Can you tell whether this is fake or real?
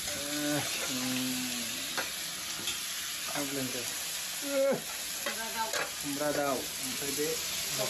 real